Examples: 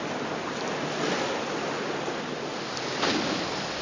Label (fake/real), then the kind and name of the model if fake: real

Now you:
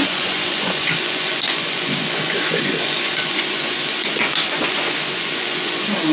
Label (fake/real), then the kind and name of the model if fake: fake, vocoder, Vocos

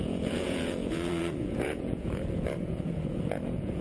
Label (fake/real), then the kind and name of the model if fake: fake, vocoder, Vocos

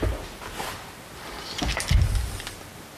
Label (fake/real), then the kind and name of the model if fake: real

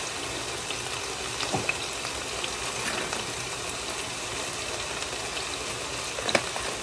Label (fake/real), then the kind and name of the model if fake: real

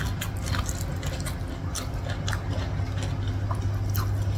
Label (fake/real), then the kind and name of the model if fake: real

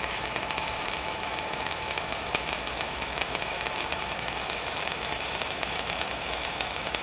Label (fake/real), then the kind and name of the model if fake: fake, autoencoder, DAC-VAE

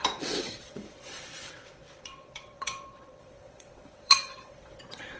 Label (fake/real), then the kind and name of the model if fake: fake, vocoder, WaveNeXt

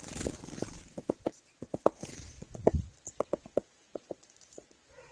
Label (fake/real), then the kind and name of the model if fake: fake, vocoder, Vocos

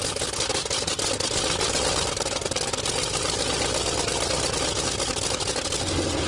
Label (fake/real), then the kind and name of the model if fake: real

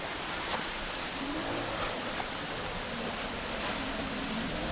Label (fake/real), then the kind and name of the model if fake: fake, vocoder, BigVGAN v2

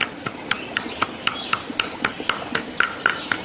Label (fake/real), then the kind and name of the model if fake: real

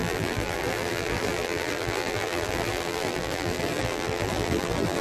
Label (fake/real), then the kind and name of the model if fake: fake, vocoder, BigVGAN v2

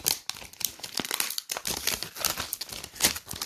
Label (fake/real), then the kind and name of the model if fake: real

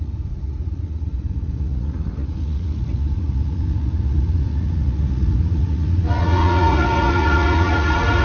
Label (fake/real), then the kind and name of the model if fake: fake, vocoder, Vocos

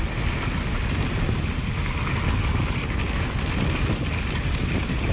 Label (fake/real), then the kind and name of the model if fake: real